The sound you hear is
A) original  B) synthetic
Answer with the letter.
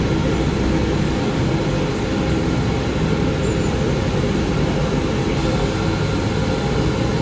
A